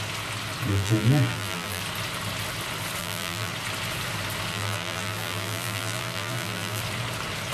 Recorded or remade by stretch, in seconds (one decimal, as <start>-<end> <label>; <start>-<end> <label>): 0.0-0.7 recorded; 0.7-1.8 remade; 1.8-3.0 recorded; 3.0-3.5 remade; 3.5-4.5 recorded; 4.5-6.8 remade; 6.8-7.5 recorded